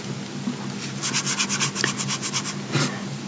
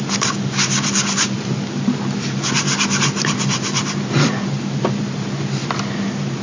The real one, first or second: first